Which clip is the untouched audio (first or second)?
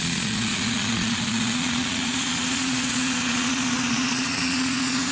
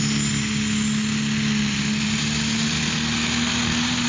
second